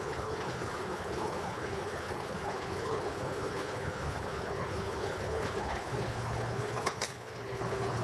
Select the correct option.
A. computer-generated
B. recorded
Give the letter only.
A